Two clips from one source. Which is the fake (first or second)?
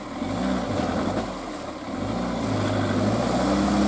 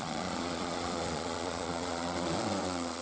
second